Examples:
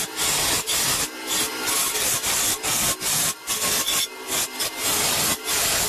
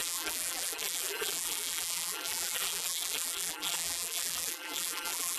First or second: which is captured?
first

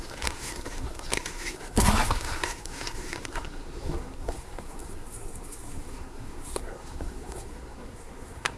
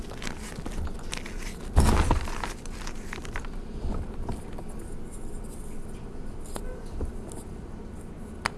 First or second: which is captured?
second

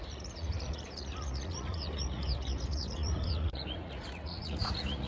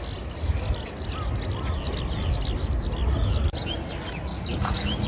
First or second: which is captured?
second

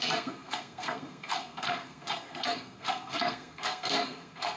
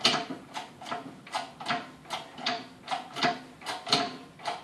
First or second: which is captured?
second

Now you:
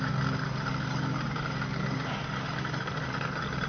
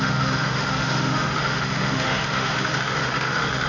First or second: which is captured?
first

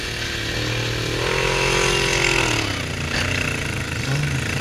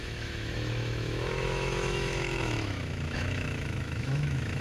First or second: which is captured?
first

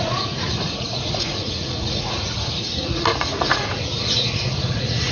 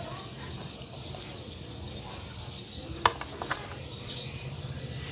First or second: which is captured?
second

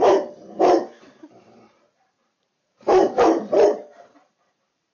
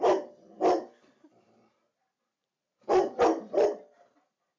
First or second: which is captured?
second